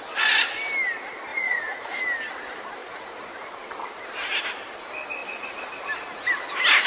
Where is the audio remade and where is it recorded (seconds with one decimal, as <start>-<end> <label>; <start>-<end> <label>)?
0.0-1.3 recorded; 1.3-2.0 remade; 2.0-2.8 recorded; 2.8-3.3 remade; 3.3-6.9 recorded

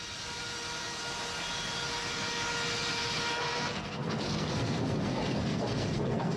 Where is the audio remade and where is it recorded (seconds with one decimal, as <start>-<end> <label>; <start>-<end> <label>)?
0.0-3.3 recorded; 3.3-6.4 remade